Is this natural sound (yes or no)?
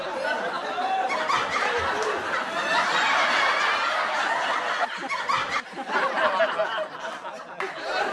yes